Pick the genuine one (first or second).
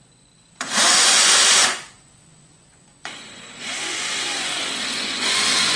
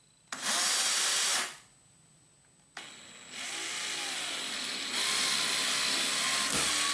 second